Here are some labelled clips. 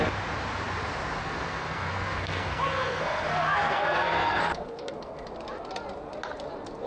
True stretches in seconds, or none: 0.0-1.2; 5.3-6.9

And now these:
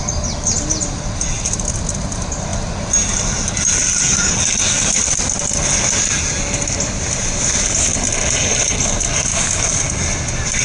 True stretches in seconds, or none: 0.0-10.6

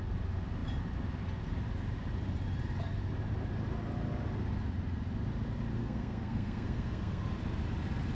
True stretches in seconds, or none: 0.0-5.8; 7.2-8.1

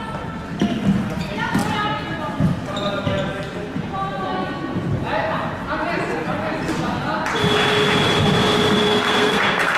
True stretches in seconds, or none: 0.0-8.9

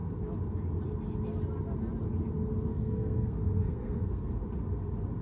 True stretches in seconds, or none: 0.0-2.7; 4.3-5.2